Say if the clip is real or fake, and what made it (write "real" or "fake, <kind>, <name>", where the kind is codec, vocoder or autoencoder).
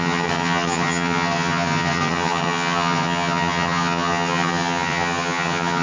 fake, vocoder, HiFi-GAN